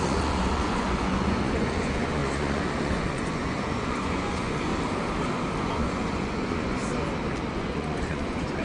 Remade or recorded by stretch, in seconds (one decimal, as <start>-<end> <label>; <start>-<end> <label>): 0.0-4.7 remade; 4.7-5.6 recorded; 5.6-6.8 remade; 6.8-7.5 recorded; 7.5-8.6 remade